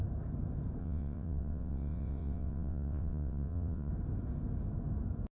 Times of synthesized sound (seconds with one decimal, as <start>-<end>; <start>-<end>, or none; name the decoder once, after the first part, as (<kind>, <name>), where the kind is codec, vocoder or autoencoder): 0.8-3.9 (vocoder, WaveNeXt)